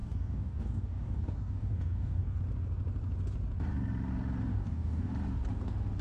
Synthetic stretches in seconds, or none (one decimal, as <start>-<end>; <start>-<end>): 0.0-2.4; 4.5-5.1